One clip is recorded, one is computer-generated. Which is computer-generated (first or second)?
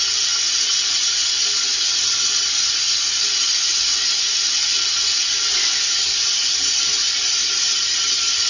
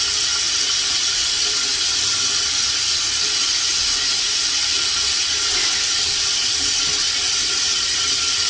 second